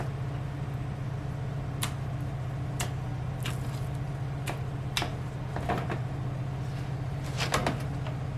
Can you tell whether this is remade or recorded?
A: recorded